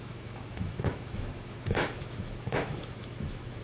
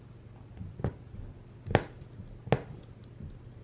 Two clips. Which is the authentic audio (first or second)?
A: second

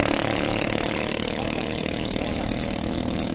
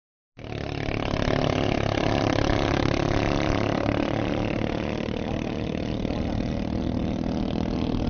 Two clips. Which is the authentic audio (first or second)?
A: second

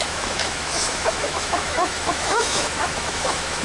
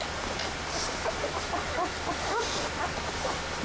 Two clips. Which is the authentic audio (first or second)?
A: second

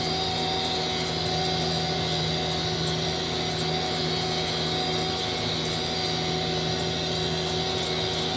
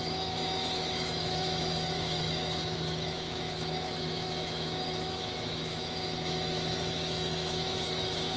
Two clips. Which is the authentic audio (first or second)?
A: first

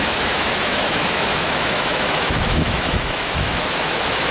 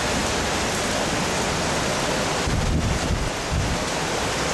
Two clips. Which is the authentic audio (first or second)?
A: second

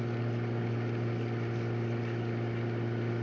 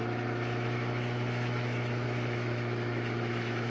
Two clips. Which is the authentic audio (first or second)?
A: first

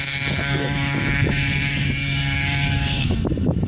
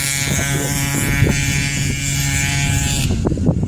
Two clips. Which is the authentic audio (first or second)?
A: second